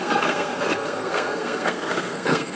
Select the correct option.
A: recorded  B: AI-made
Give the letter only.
B